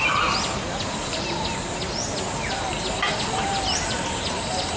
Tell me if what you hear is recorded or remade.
recorded